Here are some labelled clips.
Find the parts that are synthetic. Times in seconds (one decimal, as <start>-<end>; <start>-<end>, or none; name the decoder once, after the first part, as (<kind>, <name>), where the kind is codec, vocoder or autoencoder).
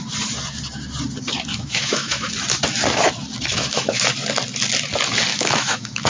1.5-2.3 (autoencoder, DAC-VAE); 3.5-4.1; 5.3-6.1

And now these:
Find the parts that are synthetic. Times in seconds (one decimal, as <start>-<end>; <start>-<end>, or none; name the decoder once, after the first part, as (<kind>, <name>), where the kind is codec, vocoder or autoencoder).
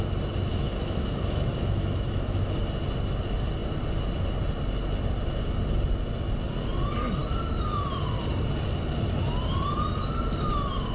0.5-2.6 (autoencoder, DAC-VAE)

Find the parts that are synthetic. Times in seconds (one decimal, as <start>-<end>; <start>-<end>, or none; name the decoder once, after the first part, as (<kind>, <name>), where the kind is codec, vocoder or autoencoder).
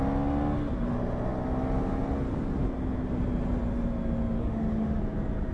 4.4-5.0 (autoencoder, DAC-VAE)